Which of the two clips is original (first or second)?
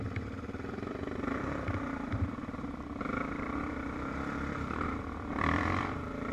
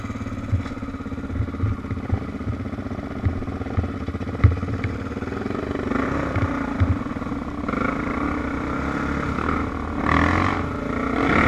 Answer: second